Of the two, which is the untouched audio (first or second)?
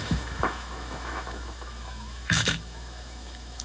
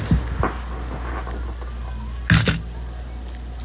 second